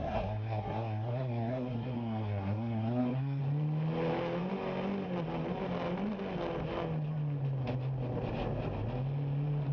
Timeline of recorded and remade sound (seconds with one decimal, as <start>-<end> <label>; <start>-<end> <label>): 0.0-3.4 remade; 3.4-9.7 recorded